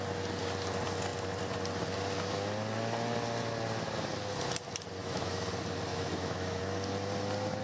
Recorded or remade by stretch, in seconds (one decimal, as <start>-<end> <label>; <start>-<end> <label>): 0.0-5.0 recorded; 5.0-5.5 remade; 5.5-5.9 recorded; 5.9-6.6 remade; 6.6-7.6 recorded